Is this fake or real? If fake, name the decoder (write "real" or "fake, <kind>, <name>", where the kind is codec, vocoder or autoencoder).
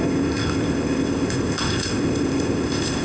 fake, codec, ZipCodec